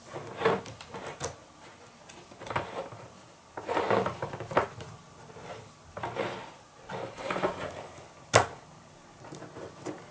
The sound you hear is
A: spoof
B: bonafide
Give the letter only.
B